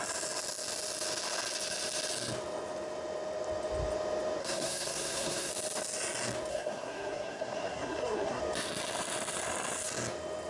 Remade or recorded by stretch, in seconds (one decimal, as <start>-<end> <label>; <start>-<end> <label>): 0.0-4.4 recorded; 4.4-5.5 remade; 5.5-6.5 recorded; 6.5-8.4 remade; 8.4-10.5 recorded